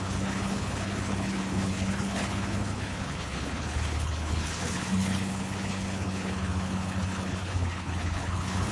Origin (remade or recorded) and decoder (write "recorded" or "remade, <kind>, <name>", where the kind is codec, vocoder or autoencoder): remade, codec, HILCodec